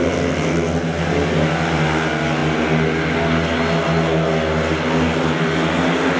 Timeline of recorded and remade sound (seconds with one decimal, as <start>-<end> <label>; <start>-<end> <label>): 0.0-6.2 recorded